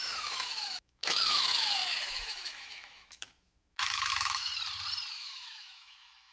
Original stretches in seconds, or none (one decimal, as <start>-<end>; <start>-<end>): 4.5-5.1